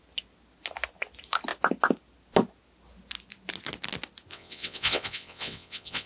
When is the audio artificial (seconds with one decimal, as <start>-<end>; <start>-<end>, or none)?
4.3-6.1